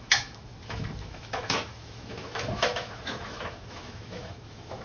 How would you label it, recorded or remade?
remade